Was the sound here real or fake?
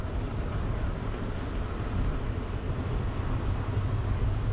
real